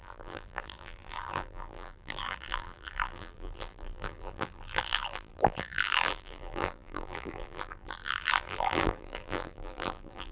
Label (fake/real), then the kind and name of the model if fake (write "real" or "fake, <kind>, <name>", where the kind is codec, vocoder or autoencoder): fake, vocoder, BigVGAN v2